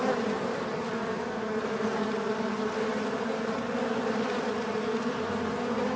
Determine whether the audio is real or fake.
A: real